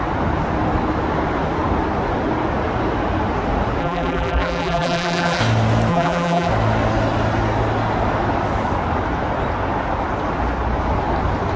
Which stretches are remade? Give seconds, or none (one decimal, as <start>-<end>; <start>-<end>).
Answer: 3.8-5.4; 5.9-6.5